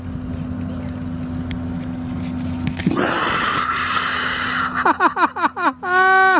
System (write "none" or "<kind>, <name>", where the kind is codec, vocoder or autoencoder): none